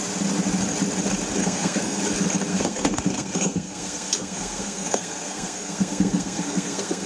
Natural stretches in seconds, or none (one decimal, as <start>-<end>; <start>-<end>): 0.0-1.4; 2.0-2.5